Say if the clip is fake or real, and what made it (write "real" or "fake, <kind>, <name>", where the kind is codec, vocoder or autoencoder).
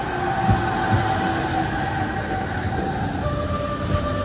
real